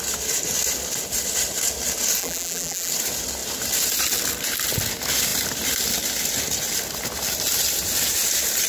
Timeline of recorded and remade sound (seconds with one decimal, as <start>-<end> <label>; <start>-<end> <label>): 0.0-2.2 recorded; 2.2-2.9 remade; 2.9-8.7 recorded